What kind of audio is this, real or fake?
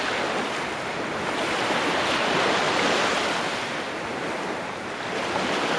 real